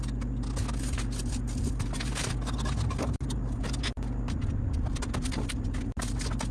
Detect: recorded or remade recorded